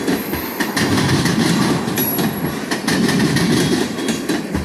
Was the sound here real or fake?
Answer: real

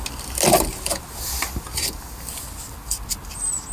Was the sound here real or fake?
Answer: real